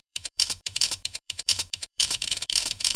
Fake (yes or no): yes